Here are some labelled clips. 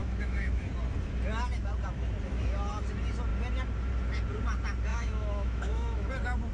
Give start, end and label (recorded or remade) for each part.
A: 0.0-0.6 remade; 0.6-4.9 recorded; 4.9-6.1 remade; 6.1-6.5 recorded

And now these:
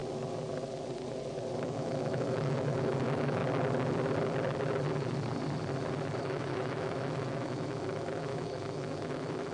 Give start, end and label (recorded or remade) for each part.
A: 0.0-1.6 recorded; 1.6-3.4 remade; 3.4-6.2 recorded; 6.2-9.5 remade

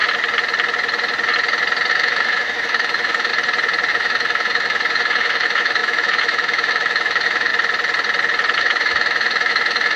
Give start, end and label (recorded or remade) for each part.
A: 0.0-1.9 recorded; 1.9-3.3 remade; 3.3-3.9 recorded; 3.9-7.5 remade; 7.5-8.6 recorded; 8.6-10.0 remade

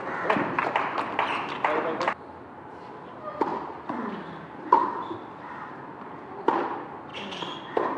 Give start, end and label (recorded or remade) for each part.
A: 0.0-8.0 recorded

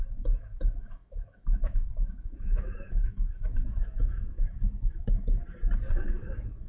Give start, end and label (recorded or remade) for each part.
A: 0.0-5.4 remade; 5.4-6.0 recorded; 6.0-6.7 remade